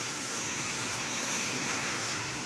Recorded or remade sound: remade